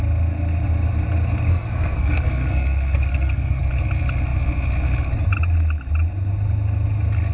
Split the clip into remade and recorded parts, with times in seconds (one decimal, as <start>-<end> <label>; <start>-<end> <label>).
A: 0.0-1.5 recorded; 1.5-3.6 remade; 3.6-7.3 recorded